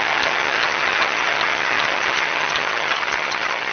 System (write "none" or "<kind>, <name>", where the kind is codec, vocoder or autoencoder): vocoder, HiFi-GAN